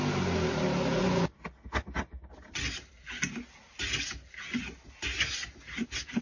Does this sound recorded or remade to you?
recorded